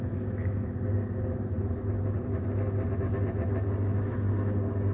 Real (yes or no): yes